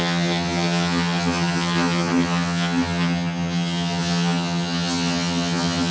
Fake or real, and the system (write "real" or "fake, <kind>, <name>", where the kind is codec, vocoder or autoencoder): fake, vocoder, HiFi-GAN